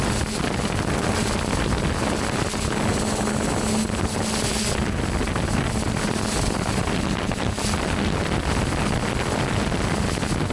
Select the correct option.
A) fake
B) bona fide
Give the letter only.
B